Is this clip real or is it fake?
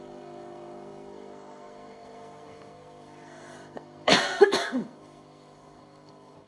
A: fake